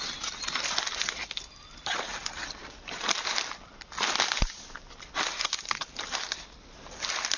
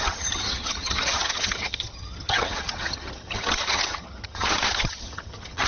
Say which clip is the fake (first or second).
second